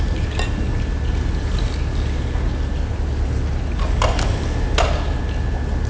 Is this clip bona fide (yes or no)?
yes